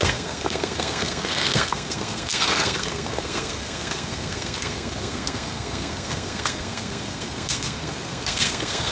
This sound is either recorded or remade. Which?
remade